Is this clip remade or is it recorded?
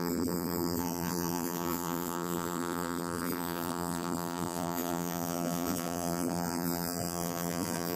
remade